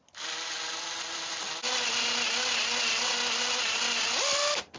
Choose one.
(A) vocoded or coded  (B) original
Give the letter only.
B